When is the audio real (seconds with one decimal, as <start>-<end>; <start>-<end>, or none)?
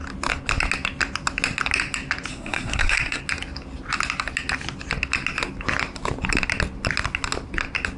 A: 0.0-2.3; 3.2-8.0